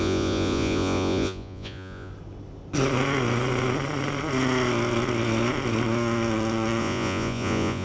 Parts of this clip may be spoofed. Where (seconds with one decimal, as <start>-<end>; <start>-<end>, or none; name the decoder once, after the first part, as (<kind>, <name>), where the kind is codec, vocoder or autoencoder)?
0.0-2.1 (vocoder, Vocos); 6.8-7.8